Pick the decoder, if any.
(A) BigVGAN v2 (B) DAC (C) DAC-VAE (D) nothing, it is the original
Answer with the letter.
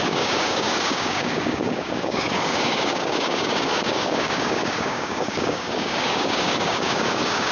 B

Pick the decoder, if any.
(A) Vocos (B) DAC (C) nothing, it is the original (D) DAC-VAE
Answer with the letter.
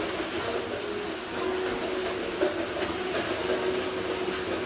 C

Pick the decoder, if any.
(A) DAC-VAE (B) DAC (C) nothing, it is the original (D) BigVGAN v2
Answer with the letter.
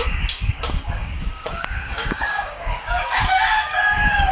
B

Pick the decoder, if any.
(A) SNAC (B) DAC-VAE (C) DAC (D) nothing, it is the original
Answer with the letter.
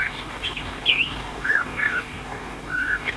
C